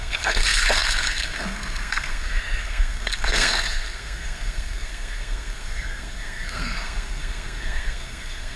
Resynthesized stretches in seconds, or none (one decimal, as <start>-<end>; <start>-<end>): 0.0-8.6